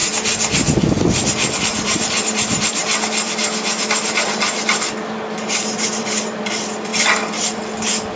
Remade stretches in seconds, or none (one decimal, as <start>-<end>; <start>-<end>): 1.6-2.8; 6.0-6.9